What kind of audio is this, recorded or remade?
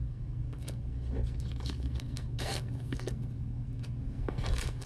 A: remade